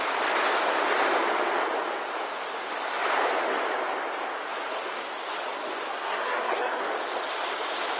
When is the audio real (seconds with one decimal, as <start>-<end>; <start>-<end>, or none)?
0.0-5.9; 6.8-8.0